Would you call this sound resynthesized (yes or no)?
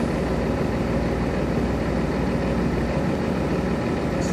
no